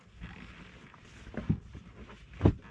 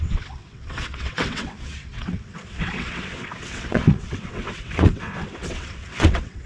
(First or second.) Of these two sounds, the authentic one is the first